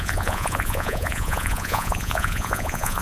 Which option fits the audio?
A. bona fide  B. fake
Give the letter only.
B